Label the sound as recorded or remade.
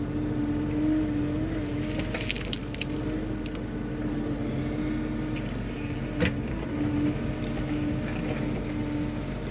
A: recorded